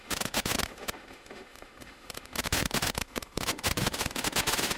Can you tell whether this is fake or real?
fake